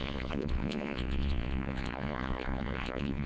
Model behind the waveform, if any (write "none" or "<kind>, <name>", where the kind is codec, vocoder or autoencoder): vocoder, Vocos